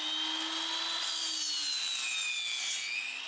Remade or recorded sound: recorded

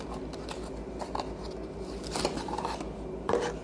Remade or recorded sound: recorded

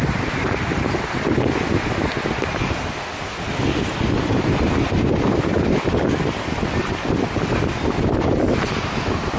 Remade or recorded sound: recorded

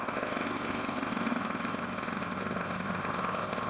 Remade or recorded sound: remade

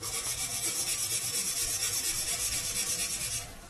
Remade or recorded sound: recorded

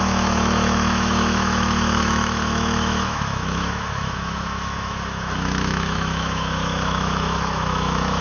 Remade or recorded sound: remade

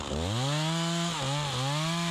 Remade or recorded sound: recorded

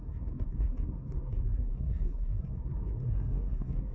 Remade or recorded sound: remade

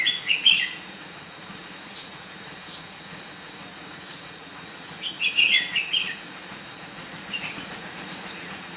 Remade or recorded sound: remade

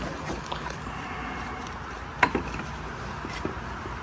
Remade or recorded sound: recorded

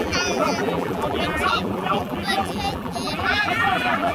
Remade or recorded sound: remade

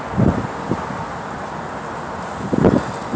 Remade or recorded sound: recorded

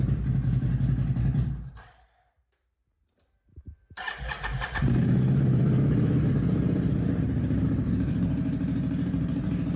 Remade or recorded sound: remade